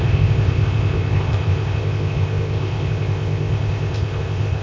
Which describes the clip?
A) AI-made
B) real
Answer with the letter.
A